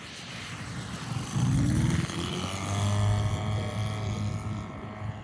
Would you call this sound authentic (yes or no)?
yes